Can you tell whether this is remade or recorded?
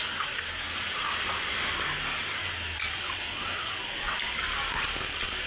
recorded